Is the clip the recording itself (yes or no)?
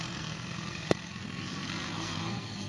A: no